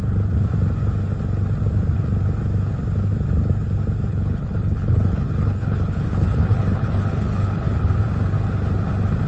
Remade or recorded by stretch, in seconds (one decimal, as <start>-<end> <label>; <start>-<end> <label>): 0.0-4.1 recorded; 4.1-7.9 remade; 7.9-9.3 recorded